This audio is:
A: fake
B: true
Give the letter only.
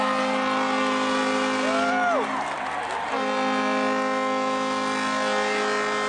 B